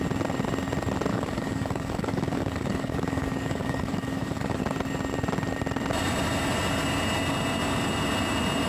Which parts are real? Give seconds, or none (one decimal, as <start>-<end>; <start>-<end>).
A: 0.0-1.1; 4.6-8.7